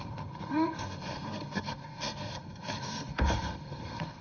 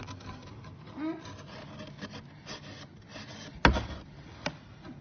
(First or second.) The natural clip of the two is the second